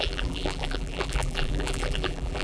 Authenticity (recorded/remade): remade